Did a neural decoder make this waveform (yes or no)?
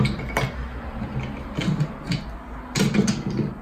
no